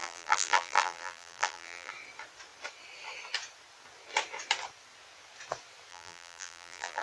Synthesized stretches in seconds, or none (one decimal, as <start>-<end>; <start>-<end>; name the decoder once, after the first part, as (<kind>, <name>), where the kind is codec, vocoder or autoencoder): 0.0-1.9 (vocoder, BigVGAN v2); 5.9-7.0